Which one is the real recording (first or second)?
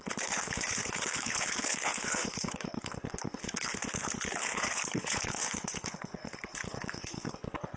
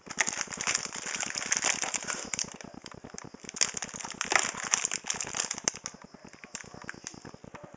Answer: second